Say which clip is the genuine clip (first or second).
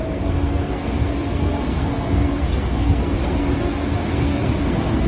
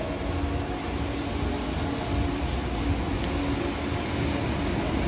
second